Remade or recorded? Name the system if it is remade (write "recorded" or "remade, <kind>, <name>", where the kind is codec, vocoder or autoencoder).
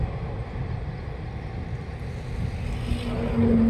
recorded